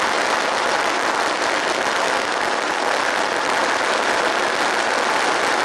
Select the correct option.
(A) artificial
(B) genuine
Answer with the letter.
B